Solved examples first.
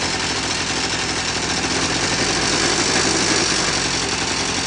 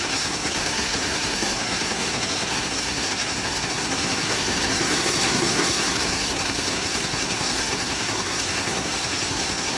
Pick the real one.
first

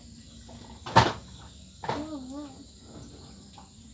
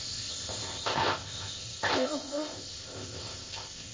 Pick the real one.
first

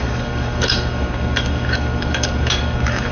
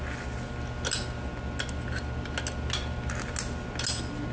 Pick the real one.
second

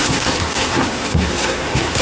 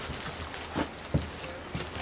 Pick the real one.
second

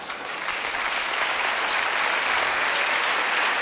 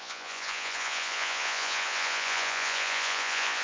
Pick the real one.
first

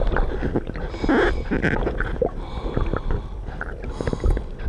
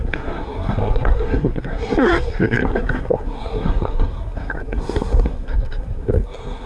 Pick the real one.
first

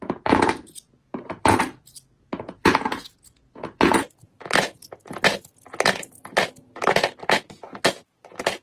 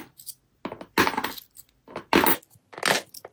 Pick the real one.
second